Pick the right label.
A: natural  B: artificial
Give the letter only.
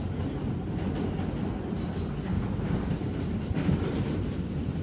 A